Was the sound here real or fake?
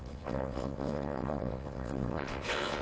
fake